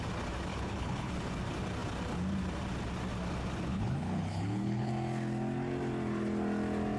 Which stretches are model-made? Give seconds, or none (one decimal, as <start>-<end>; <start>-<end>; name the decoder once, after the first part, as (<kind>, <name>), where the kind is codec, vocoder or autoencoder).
0.5-1.1 (codec, HILCodec); 3.7-4.9